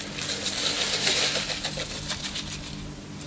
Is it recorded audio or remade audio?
recorded